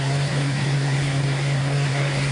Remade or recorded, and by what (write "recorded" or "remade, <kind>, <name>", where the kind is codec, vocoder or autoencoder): remade, codec, SNAC